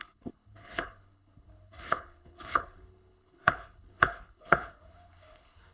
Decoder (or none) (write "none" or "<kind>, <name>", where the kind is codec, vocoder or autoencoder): codec, HILCodec